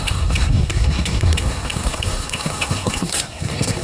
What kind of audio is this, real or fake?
fake